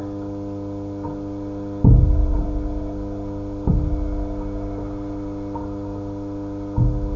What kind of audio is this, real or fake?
real